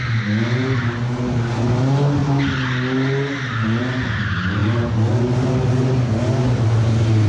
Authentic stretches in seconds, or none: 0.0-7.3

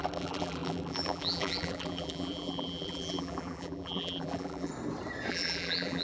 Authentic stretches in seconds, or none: 4.7-5.3

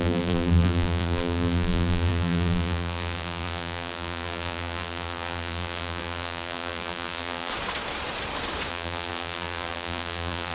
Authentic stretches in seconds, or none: 7.5-8.7

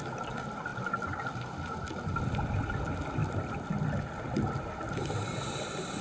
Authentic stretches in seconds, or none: 0.0-6.0